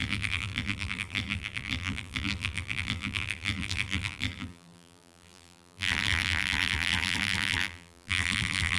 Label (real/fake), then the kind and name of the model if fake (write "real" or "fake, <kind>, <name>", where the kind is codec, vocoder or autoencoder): fake, vocoder, BigVGAN v2